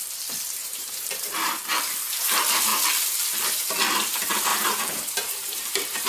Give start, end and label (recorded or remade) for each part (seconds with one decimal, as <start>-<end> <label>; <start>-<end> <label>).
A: 0.0-0.6 recorded; 0.6-1.6 remade; 1.6-4.5 recorded; 4.5-6.1 remade